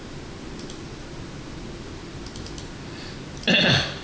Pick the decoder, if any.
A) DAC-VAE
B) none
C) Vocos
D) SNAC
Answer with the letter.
B